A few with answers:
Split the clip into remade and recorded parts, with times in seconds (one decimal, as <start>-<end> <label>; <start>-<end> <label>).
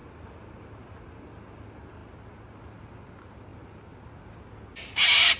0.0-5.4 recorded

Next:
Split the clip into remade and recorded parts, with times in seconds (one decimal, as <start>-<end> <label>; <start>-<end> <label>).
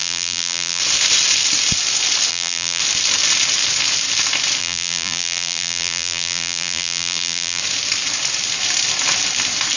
0.0-0.8 remade; 0.8-2.3 recorded; 2.3-2.8 remade; 2.8-4.6 recorded; 4.6-7.6 remade; 7.6-9.8 recorded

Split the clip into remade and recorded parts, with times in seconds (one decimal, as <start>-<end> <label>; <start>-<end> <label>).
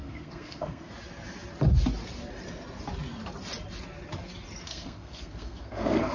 0.0-0.9 remade; 0.9-4.6 recorded; 4.6-6.1 remade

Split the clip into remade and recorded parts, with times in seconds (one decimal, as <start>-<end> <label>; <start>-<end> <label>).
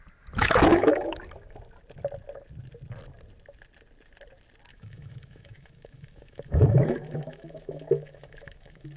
0.0-0.4 recorded; 0.4-1.2 remade; 1.2-4.7 recorded; 4.7-9.0 remade